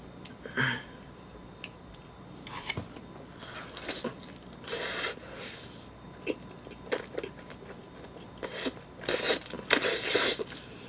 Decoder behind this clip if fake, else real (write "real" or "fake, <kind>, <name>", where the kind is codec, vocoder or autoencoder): real